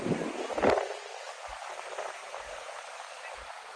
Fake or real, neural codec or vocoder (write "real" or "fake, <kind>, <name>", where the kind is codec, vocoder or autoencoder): real